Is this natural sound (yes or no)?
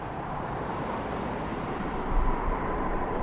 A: no